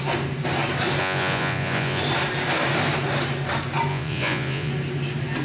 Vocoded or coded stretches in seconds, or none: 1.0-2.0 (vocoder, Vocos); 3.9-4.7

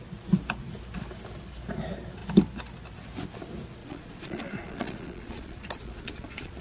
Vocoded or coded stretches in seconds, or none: 3.8-6.6 (vocoder, Vocos)

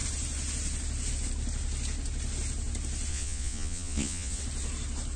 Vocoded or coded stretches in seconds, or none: 3.1-4.4 (vocoder, Vocos)